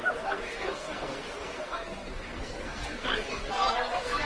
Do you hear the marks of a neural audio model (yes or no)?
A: yes